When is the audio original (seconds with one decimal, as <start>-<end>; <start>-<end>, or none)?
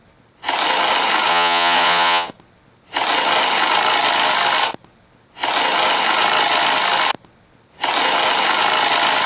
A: 0.0-1.3; 2.3-9.3